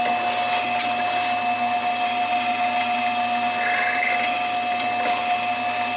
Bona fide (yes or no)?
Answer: yes